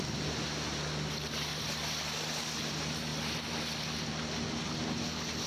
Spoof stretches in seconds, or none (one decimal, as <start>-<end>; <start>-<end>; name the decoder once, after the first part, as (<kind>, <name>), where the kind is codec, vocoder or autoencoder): none